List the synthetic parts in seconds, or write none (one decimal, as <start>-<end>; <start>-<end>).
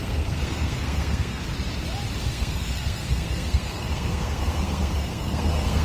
0.0-1.4; 2.3-5.8